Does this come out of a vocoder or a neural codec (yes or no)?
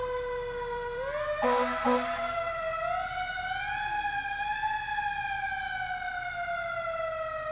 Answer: no